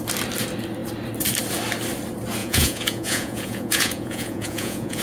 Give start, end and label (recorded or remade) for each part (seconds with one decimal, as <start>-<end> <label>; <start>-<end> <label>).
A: 0.0-2.4 recorded; 2.4-5.0 remade